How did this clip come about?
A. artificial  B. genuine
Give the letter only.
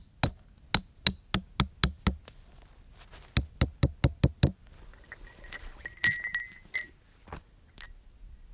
B